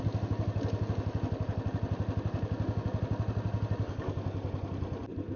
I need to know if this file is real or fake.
real